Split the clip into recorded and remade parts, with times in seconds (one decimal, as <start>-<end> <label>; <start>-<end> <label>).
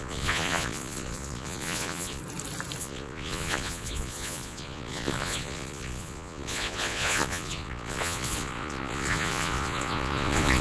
0.0-2.2 remade; 2.2-2.8 recorded; 2.8-10.6 remade